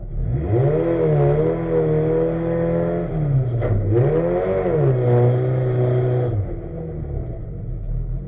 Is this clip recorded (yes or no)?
yes